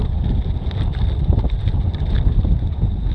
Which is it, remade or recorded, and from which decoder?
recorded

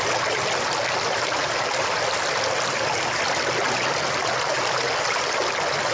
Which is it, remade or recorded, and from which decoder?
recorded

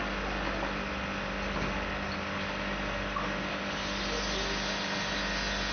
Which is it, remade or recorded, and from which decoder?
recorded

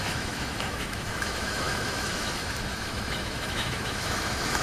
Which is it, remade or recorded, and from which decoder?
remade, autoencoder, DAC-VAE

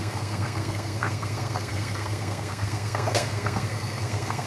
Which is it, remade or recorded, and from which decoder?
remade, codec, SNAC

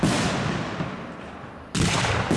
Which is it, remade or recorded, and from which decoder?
recorded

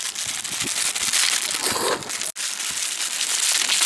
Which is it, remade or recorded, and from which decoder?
recorded